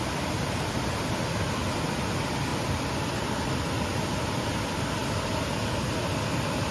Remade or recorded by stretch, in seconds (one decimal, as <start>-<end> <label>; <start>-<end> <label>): 0.0-2.5 recorded; 2.5-3.0 remade; 3.0-5.0 recorded; 5.0-5.5 remade; 5.5-6.7 recorded